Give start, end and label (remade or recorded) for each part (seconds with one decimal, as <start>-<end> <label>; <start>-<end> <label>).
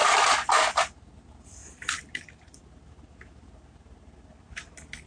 0.0-1.6 recorded; 1.6-2.6 remade; 2.6-5.1 recorded